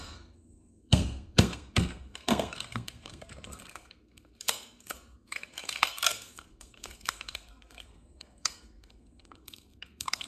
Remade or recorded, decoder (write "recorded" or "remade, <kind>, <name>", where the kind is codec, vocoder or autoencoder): remade, codec, SNAC